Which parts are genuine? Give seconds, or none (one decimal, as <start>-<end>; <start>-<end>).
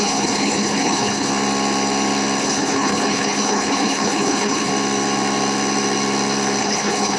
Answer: 1.3-2.4; 4.7-6.6